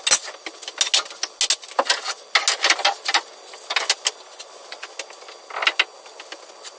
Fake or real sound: real